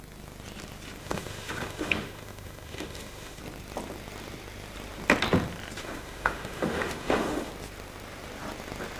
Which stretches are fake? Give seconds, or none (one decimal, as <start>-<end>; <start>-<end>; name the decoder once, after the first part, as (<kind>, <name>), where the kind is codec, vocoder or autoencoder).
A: 1.0-3.4 (autoencoder, DAC-VAE); 5.8-7.5